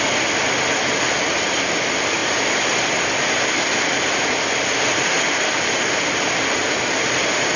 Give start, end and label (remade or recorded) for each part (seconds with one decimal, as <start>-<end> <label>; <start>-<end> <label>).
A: 0.0-7.6 recorded